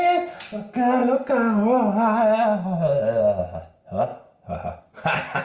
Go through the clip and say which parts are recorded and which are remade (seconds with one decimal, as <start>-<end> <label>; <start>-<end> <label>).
0.0-5.4 recorded

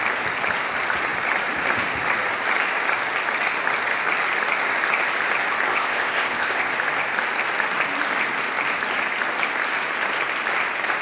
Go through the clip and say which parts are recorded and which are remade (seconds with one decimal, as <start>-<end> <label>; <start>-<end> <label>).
0.0-5.7 recorded; 5.7-6.7 remade; 6.7-11.0 recorded